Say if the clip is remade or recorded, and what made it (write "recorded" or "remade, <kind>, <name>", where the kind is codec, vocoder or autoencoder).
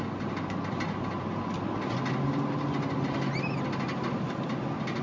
recorded